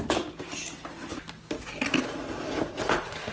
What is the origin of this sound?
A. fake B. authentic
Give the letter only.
B